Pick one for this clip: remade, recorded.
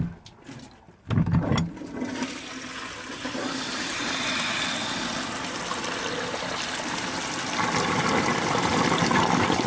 recorded